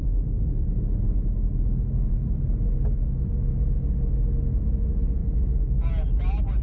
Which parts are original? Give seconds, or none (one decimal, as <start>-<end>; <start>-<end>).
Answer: 0.0-6.6